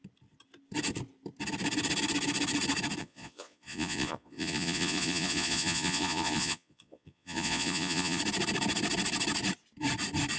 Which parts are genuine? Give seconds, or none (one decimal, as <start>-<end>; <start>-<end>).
0.0-3.0; 8.2-10.4